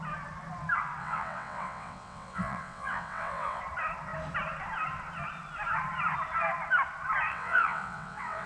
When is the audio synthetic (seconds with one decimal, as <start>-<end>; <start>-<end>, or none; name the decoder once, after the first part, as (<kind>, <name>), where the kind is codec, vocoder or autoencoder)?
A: 1.0-3.6 (vocoder, WaveNeXt); 7.3-8.5